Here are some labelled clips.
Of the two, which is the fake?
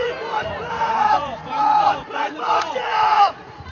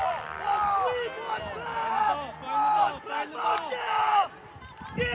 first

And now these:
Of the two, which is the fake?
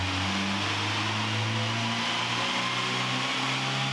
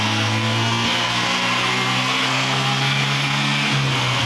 second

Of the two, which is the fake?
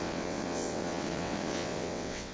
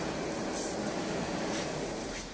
first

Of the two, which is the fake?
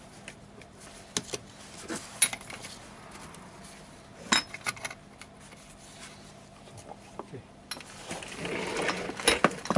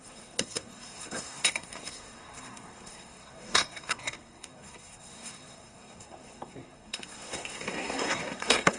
second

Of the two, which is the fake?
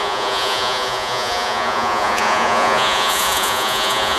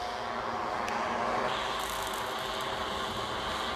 first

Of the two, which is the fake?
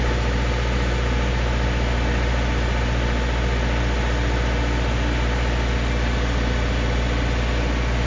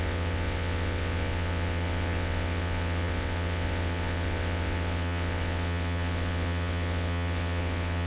second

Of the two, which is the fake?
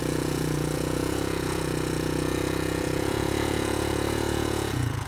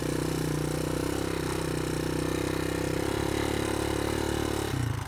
first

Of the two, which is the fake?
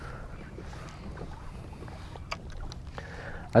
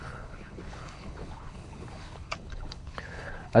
second